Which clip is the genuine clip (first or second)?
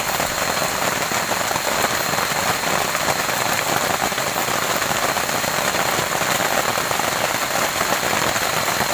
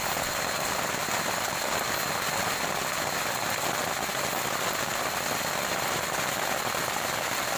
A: second